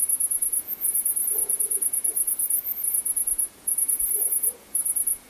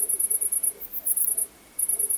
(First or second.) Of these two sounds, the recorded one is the second